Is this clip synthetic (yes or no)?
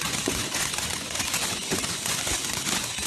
yes